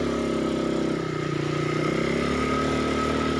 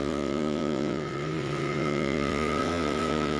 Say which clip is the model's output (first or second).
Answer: second